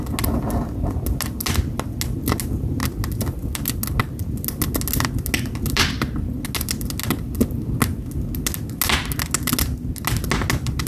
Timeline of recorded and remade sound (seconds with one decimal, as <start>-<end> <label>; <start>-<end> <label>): 0.0-10.9 recorded